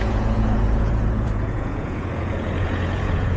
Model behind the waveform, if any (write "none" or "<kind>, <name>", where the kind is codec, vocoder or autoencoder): vocoder, Vocos